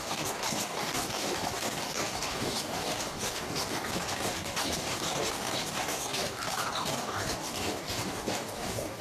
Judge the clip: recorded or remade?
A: remade